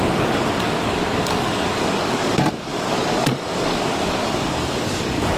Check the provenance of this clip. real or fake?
fake